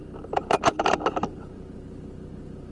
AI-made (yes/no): no